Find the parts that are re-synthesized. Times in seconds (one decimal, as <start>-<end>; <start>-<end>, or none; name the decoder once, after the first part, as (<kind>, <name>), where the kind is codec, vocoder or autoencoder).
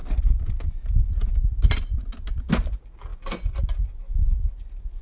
none